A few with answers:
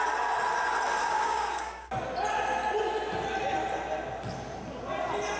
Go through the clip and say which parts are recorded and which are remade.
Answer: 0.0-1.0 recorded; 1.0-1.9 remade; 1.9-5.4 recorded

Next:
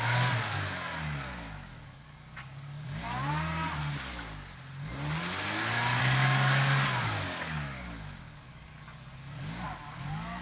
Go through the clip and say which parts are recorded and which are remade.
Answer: 0.0-3.0 remade; 3.0-6.0 recorded; 6.0-10.4 remade

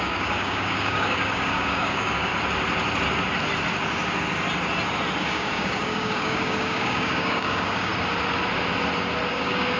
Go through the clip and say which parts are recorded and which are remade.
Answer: 0.0-2.3 remade; 2.3-5.2 recorded; 5.2-7.9 remade; 7.9-9.3 recorded; 9.3-9.8 remade

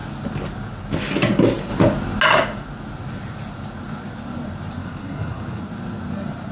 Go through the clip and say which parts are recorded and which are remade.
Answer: 0.0-4.8 recorded; 4.8-5.6 remade; 5.6-6.5 recorded

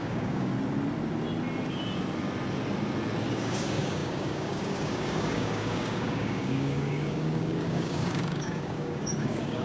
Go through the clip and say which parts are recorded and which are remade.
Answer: 0.0-0.5 remade; 0.5-3.3 recorded; 3.3-9.6 remade

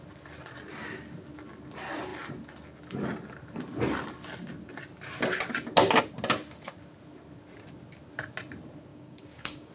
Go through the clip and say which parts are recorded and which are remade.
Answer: 0.0-8.9 recorded; 8.9-9.7 remade

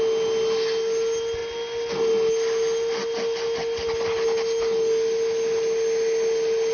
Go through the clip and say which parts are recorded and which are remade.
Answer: 0.0-6.7 recorded